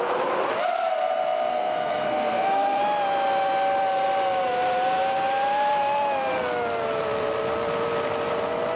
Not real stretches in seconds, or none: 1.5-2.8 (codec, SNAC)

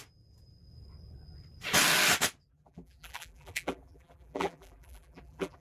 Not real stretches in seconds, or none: 2.5-5.6 (vocoder, BigVGAN v2)

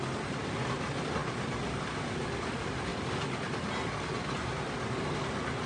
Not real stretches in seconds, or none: none

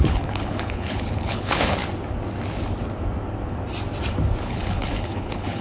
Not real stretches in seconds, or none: 0.0-1.8 (codec, HILCodec); 4.4-5.6

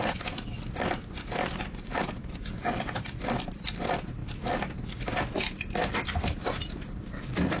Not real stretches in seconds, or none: 2.4-3.0 (codec, DAC)

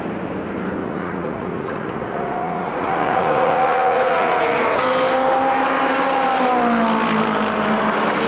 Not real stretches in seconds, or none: 0.8-4.8 (vocoder, Vocos)